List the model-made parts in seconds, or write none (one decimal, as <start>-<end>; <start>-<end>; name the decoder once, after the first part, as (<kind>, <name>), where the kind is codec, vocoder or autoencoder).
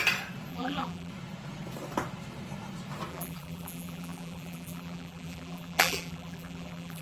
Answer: 0.5-1.1 (vocoder, BigVGAN v2); 3.1-7.0